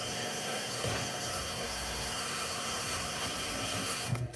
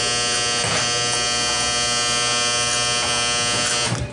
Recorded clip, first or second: second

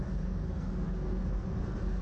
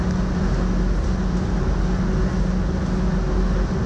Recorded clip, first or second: second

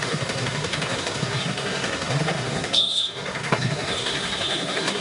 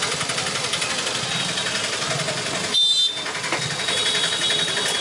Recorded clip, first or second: second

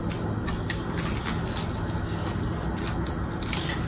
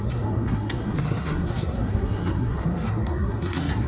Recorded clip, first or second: first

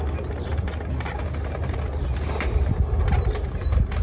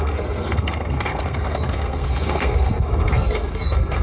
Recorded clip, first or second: first